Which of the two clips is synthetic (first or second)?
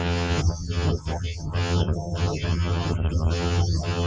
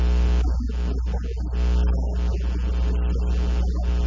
first